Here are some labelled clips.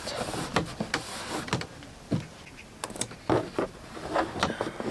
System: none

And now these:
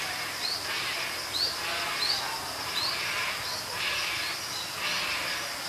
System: none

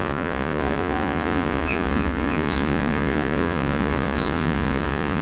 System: vocoder, Vocos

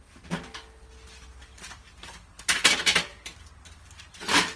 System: none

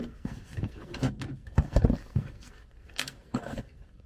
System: codec, SNAC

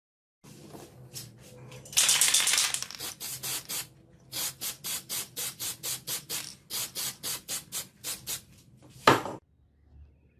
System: none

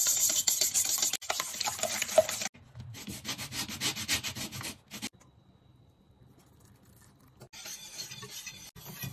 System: none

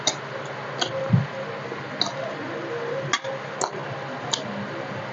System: none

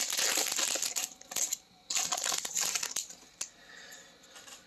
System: none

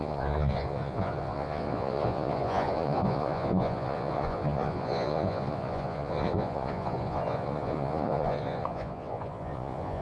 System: vocoder, Vocos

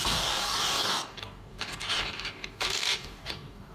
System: codec, DAC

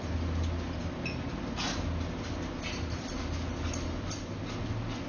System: none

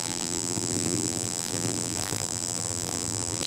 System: vocoder, BigVGAN v2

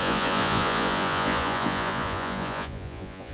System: vocoder, Vocos